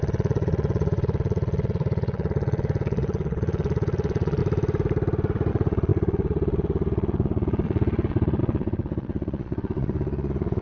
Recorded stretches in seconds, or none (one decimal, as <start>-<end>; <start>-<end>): 4.4-5.5